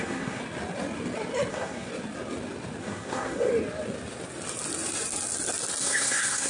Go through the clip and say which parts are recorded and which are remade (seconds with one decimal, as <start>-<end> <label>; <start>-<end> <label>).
0.0-0.4 remade; 0.4-1.5 recorded; 1.5-1.9 remade; 1.9-2.8 recorded; 2.8-3.5 remade; 3.5-5.8 recorded; 5.8-6.5 remade